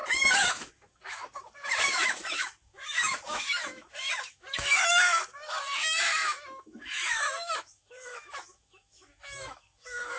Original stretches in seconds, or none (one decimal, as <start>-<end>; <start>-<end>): none